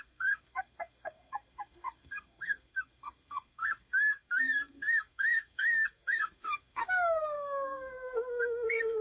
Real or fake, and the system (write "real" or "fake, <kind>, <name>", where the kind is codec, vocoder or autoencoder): fake, codec, SNAC